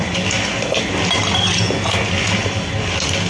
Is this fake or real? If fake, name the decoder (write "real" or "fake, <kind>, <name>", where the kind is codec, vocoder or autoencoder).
real